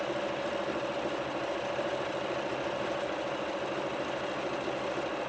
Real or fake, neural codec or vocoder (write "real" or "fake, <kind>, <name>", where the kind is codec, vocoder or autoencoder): real